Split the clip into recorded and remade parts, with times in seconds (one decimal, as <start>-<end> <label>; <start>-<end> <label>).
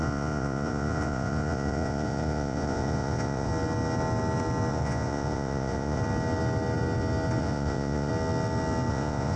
0.0-3.5 remade; 3.5-4.7 recorded; 4.7-6.0 remade; 6.0-7.4 recorded; 7.4-8.1 remade; 8.1-8.9 recorded; 8.9-9.4 remade